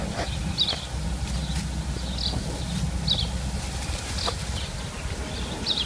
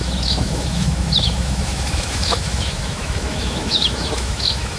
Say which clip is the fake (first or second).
second